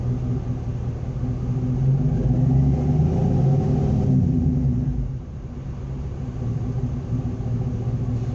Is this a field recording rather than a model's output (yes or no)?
yes